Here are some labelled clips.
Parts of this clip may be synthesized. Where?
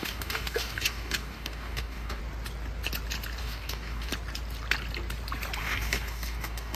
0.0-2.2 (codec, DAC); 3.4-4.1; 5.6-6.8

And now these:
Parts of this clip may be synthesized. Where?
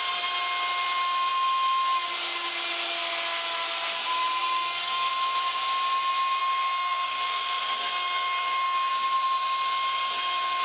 4.4-5.1 (codec, DAC); 6.4-8.9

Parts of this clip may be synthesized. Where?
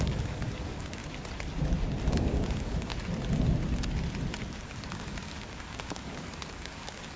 0.0-1.0 (codec, DAC); 2.1-2.9; 4.5-7.2